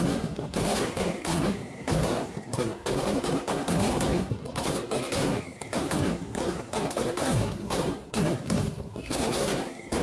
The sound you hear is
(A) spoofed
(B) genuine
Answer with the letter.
A